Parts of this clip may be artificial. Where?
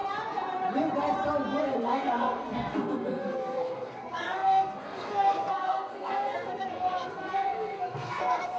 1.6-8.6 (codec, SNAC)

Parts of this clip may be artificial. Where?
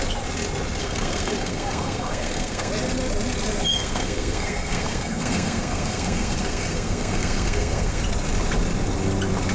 0.8-2.7 (codec, SNAC); 3.7-8.0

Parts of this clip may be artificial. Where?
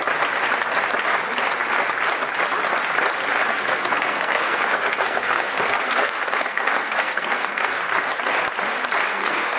3.5-7.9 (codec, SNAC); 9.1-9.6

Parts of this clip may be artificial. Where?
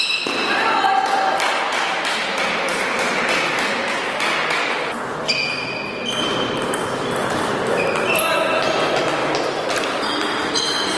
none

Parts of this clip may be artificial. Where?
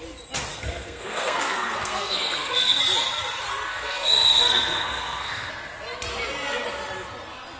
0.5-2.8 (codec, SNAC); 3.7-5.5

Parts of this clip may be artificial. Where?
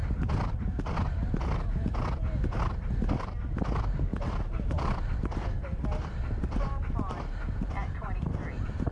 none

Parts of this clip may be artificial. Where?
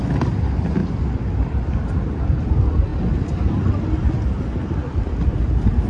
none